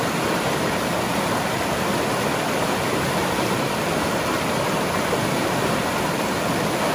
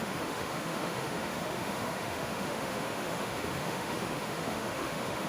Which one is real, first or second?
first